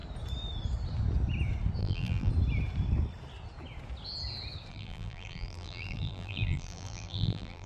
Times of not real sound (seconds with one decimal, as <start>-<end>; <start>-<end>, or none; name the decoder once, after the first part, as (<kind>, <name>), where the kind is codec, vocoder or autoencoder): 1.8-2.3 (vocoder, BigVGAN v2); 4.7-7.7